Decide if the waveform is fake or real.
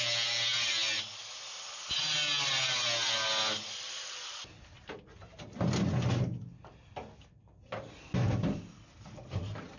real